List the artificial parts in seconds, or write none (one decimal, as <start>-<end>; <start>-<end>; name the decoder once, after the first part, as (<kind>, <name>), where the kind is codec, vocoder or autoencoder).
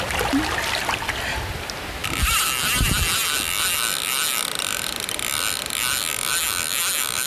none